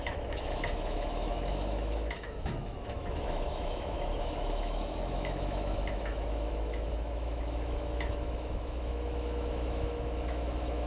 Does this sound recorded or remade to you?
remade